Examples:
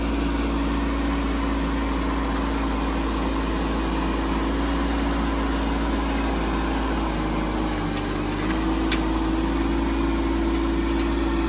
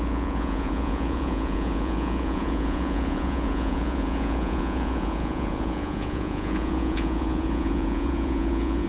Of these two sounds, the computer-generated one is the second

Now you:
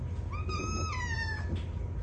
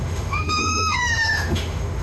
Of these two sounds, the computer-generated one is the second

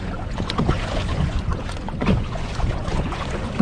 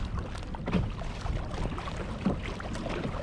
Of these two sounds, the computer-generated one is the first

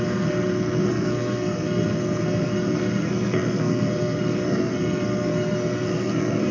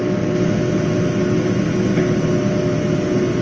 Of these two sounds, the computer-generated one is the first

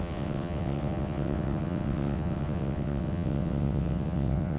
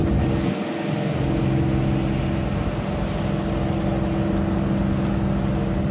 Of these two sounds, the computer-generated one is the first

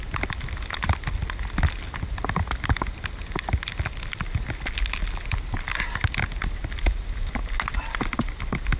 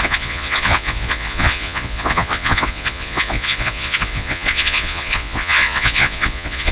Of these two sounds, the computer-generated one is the second